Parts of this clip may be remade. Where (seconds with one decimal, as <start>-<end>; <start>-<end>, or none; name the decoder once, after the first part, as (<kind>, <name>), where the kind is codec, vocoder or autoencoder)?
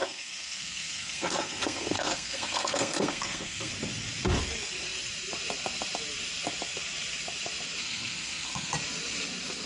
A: 0.0-3.7 (codec, SNAC); 7.8-8.7